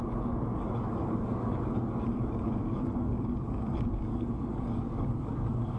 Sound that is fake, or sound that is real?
fake